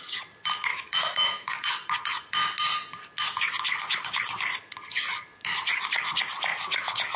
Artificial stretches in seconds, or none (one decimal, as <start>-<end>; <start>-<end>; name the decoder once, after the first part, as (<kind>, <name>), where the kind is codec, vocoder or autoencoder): 0.7-1.5 (autoencoder, DAC-VAE); 6.5-7.2